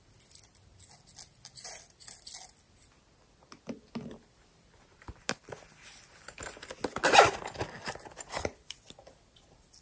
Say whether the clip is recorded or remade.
recorded